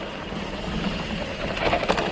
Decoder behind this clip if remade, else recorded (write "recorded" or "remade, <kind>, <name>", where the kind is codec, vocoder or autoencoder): remade, vocoder, BigVGAN v2